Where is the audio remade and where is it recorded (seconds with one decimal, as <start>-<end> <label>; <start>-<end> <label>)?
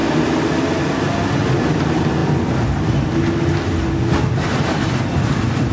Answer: 0.0-5.7 recorded